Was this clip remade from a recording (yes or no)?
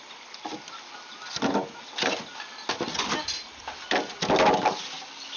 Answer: no